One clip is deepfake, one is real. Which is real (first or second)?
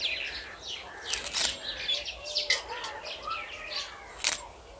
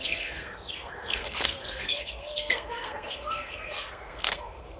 first